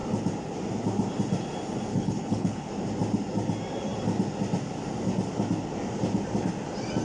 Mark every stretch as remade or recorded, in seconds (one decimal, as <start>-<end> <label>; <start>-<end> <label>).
0.0-1.9 recorded; 1.9-2.7 remade; 2.7-7.0 recorded